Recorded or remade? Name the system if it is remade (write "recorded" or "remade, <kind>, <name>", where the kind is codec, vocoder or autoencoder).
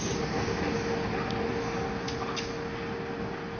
recorded